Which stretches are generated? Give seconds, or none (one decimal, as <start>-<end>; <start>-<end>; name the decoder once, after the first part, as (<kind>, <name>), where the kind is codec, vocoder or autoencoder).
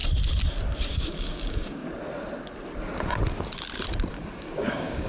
0.9-1.8 (codec, DAC); 4.1-5.1